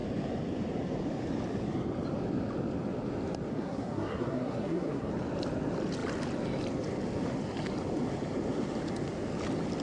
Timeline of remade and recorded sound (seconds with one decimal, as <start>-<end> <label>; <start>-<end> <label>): 0.0-3.5 recorded; 3.5-5.1 remade; 5.1-9.8 recorded